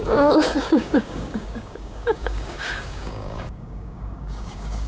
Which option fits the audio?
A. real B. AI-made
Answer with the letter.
B